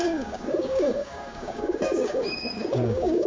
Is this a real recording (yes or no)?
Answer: no